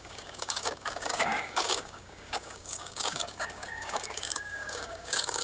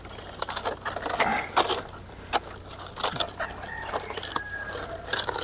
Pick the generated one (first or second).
first